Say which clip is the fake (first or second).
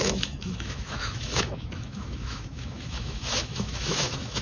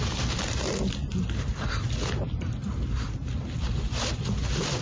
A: first